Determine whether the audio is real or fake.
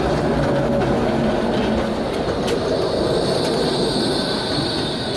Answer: real